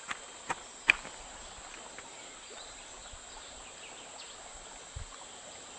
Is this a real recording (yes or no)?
yes